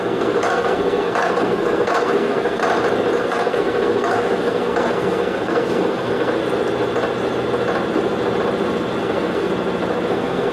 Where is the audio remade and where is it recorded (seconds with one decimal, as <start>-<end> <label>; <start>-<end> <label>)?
0.0-2.6 remade; 2.6-3.2 recorded; 3.2-6.4 remade; 6.4-9.0 recorded; 9.0-9.5 remade; 9.5-10.1 recorded; 10.1-10.5 remade